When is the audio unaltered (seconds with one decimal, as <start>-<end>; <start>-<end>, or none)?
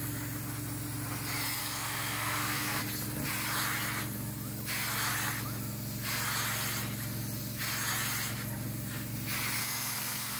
0.0-1.6; 2.8-9.6